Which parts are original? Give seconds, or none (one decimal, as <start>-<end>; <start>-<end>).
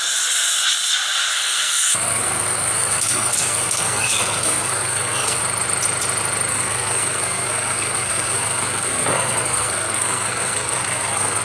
0.0-1.3; 5.4-6.5